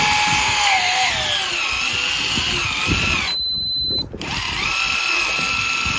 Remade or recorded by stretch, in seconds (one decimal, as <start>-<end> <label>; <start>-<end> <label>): 0.0-0.4 recorded; 0.4-1.1 remade; 1.1-6.0 recorded